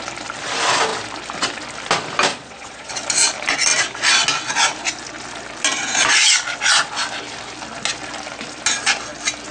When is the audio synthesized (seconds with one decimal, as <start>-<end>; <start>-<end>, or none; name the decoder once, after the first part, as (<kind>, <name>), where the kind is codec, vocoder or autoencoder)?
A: 2.3-2.9 (vocoder, Vocos)